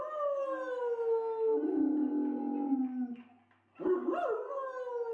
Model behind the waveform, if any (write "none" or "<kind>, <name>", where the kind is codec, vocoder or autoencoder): none